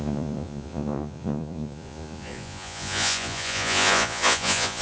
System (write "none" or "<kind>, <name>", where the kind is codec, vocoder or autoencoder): vocoder, Vocos